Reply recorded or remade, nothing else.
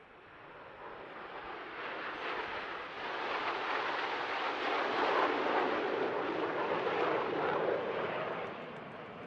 recorded